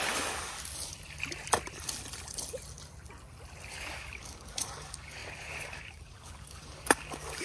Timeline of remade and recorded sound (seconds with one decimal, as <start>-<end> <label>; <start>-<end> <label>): 0.0-0.9 remade; 0.9-3.7 recorded; 3.7-7.4 remade